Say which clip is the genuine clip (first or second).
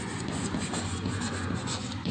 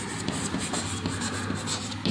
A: second